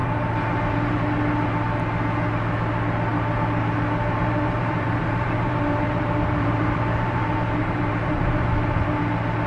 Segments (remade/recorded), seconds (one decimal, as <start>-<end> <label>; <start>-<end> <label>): 0.0-0.9 remade; 0.9-4.2 recorded; 4.2-9.0 remade; 9.0-9.5 recorded